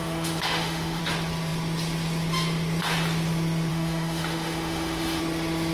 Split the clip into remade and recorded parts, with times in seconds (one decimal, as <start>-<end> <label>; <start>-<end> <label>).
0.0-1.0 remade; 1.0-3.7 recorded; 3.7-5.2 remade; 5.2-5.7 recorded